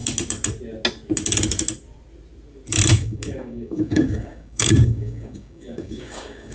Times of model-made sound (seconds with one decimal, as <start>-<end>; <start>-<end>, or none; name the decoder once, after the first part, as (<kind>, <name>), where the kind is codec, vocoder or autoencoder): 2.9-6.5 (codec, DAC)